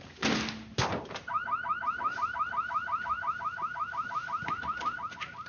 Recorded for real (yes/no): yes